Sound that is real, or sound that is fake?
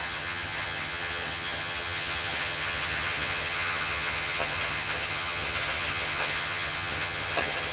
fake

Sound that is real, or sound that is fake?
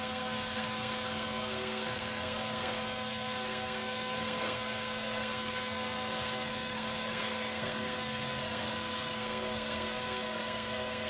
fake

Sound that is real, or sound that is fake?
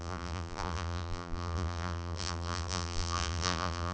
fake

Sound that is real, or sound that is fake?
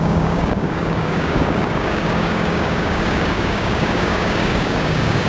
fake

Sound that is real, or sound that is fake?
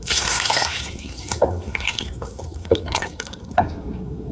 fake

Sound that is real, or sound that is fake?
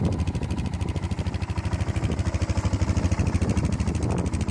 real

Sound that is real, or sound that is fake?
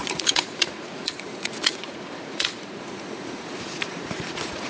fake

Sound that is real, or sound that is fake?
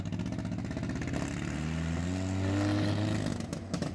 real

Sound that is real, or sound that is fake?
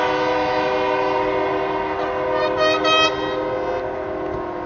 real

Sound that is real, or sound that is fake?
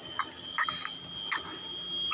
real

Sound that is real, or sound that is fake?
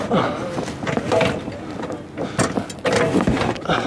real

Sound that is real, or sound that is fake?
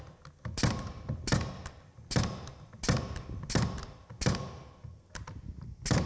real